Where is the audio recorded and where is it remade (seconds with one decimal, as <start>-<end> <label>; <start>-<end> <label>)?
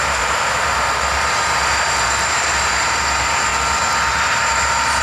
0.0-3.5 remade; 3.5-4.1 recorded; 4.1-5.0 remade